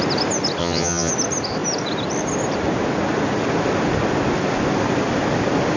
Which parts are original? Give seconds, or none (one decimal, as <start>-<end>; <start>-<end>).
0.0-0.6; 1.1-5.8